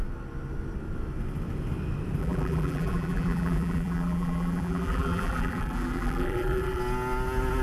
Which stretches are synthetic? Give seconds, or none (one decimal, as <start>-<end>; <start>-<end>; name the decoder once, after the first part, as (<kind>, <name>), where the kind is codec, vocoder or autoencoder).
2.2-6.8 (vocoder, BigVGAN v2)